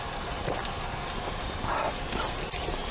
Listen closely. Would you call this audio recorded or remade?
recorded